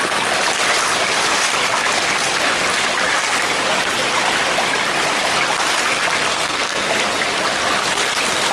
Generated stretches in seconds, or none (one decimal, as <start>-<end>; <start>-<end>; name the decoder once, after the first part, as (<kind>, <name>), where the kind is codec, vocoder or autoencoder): 6.3-6.9 (codec, SNAC)